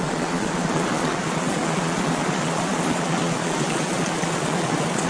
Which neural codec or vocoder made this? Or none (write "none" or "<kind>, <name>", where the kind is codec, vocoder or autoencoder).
vocoder, Vocos